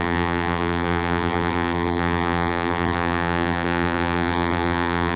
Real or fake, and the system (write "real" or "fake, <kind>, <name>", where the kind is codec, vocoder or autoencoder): fake, vocoder, BigVGAN v2